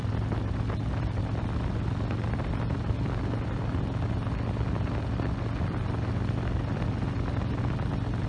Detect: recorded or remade recorded